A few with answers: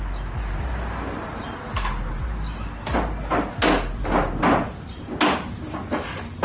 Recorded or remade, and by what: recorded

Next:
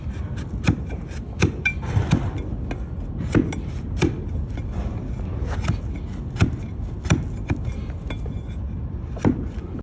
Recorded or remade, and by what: recorded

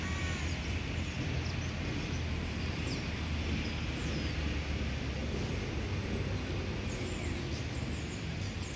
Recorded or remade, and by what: recorded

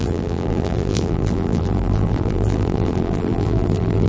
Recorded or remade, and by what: remade, vocoder, BigVGAN v2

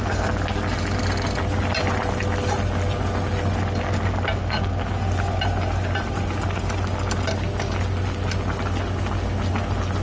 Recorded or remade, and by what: recorded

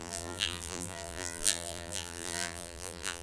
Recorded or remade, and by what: remade, vocoder, BigVGAN v2